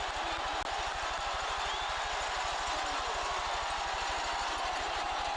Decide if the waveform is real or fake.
real